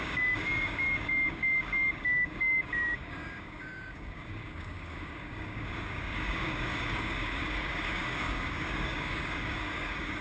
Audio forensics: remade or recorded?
remade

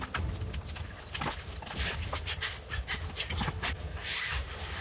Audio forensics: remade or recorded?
recorded